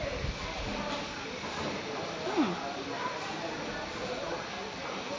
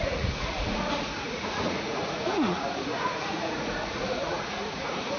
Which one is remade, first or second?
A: second